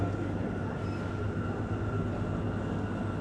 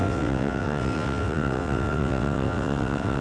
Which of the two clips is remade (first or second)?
second